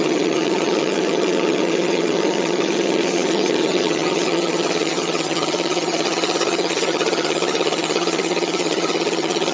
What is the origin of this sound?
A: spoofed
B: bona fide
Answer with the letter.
A